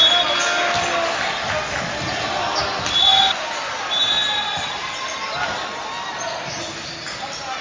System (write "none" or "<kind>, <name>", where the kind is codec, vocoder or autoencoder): none